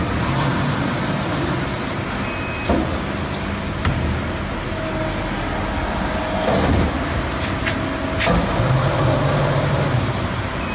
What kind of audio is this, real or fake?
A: real